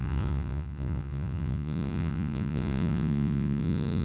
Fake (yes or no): yes